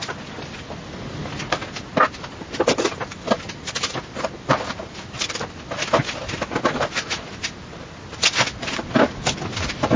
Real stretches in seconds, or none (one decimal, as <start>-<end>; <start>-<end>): 0.0-10.0